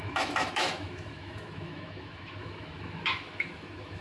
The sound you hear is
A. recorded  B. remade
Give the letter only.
B